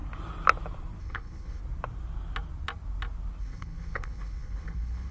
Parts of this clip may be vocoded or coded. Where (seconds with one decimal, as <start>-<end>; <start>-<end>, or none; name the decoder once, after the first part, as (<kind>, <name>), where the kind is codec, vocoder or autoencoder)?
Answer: 1.0-1.6 (codec, HILCodec); 3.4-5.1